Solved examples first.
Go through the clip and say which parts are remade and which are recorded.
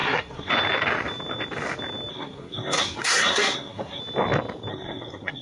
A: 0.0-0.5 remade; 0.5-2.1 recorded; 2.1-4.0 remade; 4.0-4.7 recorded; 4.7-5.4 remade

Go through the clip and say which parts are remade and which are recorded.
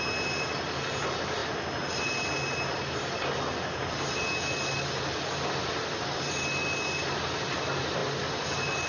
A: 0.0-8.9 recorded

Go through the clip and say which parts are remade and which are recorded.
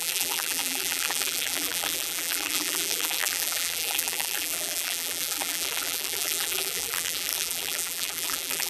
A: 0.0-8.7 remade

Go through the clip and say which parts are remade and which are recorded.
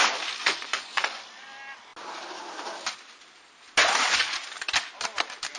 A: 0.0-0.4 recorded; 0.4-1.2 remade; 1.2-3.8 recorded; 3.8-4.4 remade; 4.4-5.6 recorded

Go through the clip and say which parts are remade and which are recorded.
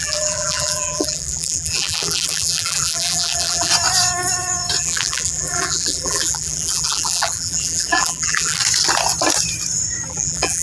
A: 0.0-3.7 remade; 3.7-4.8 recorded; 4.8-8.6 remade; 8.6-10.1 recorded; 10.1-10.6 remade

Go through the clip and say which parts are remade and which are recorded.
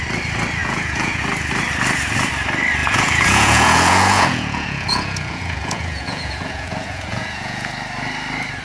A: 0.0-0.6 recorded; 0.6-1.2 remade; 1.2-2.8 recorded; 2.8-7.7 remade; 7.7-8.6 recorded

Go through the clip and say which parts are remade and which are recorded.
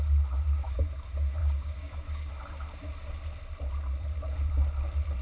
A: 0.0-1.4 recorded; 1.4-2.3 remade; 2.3-5.2 recorded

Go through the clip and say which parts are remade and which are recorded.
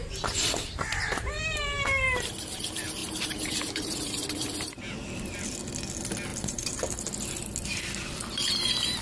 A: 0.0-3.0 recorded; 3.0-4.1 remade; 4.1-6.3 recorded; 6.3-7.1 remade; 7.1-9.0 recorded